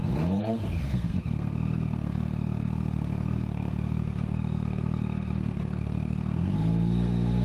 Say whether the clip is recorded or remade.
remade